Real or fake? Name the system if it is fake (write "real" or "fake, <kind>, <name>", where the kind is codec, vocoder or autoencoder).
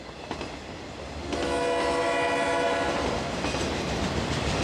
real